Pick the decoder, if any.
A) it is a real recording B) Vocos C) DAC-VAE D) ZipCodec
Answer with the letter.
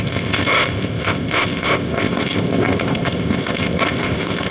D